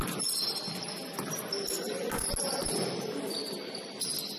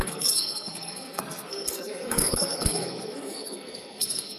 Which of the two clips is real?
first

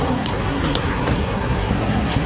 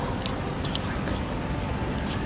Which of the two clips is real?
second